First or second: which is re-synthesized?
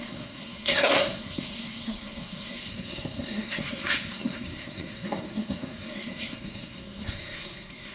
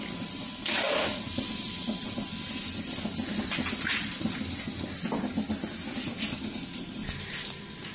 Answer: first